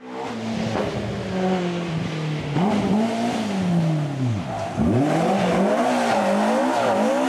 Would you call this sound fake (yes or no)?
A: no